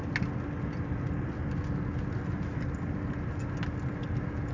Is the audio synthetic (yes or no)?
no